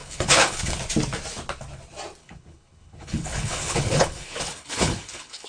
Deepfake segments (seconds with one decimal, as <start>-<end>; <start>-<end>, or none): 0.0-0.8; 2.2-5.5